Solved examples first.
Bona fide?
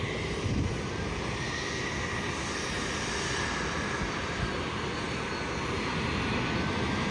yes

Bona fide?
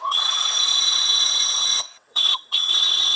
no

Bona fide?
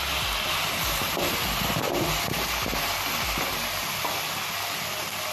yes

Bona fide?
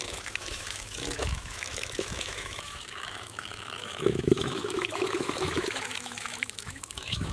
no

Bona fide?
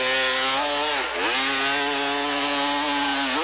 yes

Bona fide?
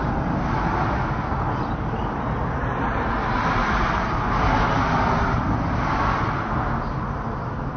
yes